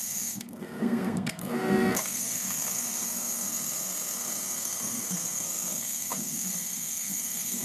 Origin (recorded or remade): remade